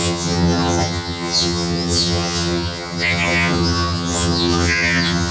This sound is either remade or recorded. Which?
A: remade